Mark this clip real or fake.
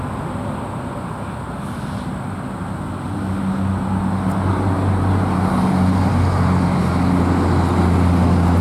real